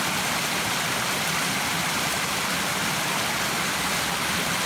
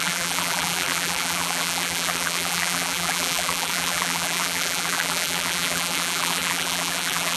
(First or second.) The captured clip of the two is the first